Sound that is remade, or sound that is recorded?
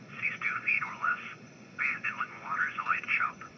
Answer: remade